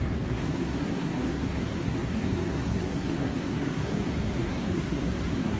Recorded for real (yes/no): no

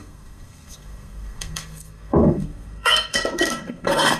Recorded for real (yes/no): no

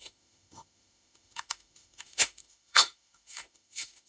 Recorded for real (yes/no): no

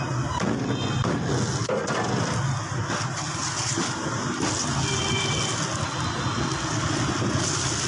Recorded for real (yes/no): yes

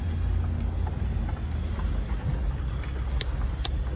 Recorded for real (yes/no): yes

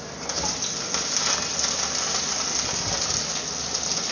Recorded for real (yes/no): yes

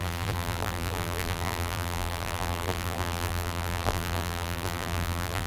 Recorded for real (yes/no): no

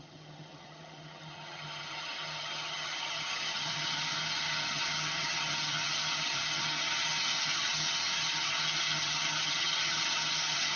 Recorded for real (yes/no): no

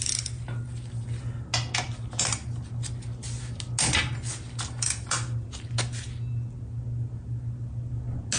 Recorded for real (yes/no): yes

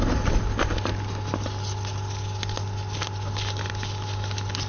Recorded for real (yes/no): yes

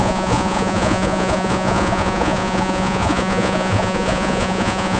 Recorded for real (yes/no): no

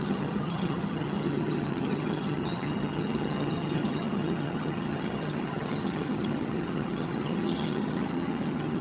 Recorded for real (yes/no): no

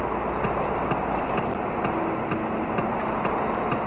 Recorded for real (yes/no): yes